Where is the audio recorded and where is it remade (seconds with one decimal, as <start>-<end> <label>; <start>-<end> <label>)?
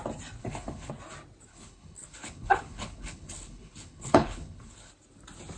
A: 0.0-0.4 recorded; 0.4-0.9 remade; 0.9-1.5 recorded; 1.5-4.9 remade; 4.9-5.6 recorded